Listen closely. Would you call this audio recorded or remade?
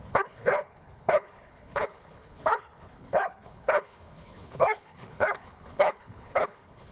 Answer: remade